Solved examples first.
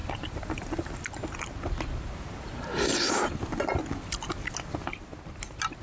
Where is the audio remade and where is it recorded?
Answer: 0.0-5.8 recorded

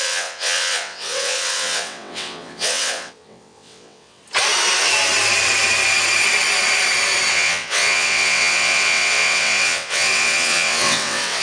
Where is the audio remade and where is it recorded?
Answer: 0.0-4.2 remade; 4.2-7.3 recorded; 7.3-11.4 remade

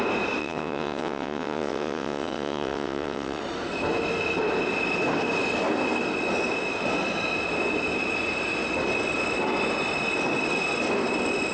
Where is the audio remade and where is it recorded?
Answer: 0.0-0.4 recorded; 0.4-3.4 remade; 3.4-11.5 recorded